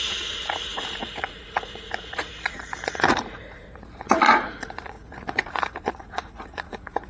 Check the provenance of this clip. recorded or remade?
remade